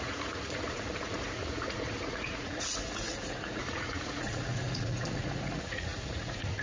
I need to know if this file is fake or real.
fake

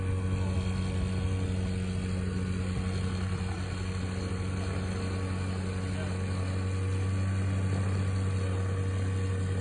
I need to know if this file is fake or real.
real